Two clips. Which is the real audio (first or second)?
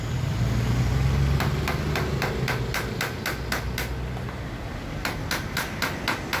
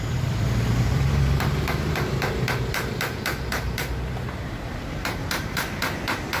first